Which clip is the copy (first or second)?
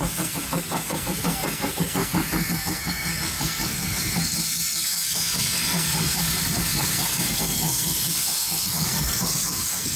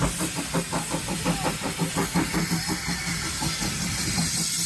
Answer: first